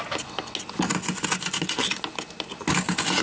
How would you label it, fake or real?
real